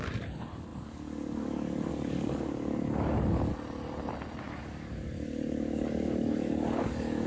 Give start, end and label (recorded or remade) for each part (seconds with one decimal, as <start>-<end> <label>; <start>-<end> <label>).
0.0-3.5 remade; 3.5-4.4 recorded; 4.4-7.3 remade